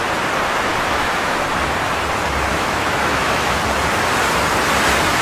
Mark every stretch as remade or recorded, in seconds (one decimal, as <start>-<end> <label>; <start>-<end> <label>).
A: 0.0-0.9 recorded; 0.9-1.4 remade; 1.4-2.5 recorded; 2.5-3.6 remade; 3.6-5.2 recorded